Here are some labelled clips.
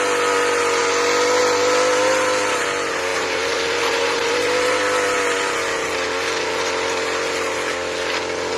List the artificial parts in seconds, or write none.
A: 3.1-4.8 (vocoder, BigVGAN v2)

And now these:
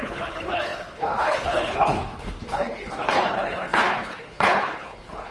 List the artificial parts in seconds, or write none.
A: 0.0-5.3 (codec, HILCodec)

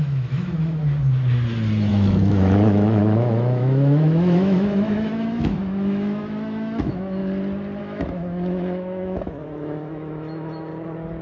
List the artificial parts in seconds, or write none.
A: 0.0-0.8 (autoencoder, DAC-VAE); 1.9-7.2; 7.8-10.7

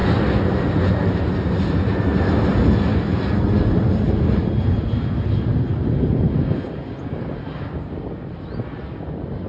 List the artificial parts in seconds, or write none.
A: none

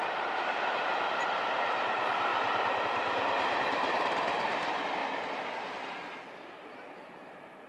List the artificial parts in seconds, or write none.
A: 0.0-2.3 (vocoder, BigVGAN v2); 2.8-5.0; 5.6-7.7

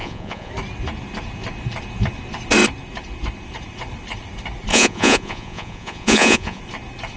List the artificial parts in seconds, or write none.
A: 0.0-0.5 (vocoder, Vocos); 4.7-6.6

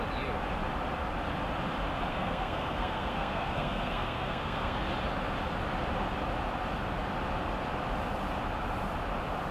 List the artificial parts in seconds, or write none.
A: 2.1-4.8 (codec, SNAC)